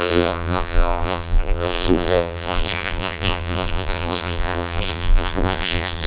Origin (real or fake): fake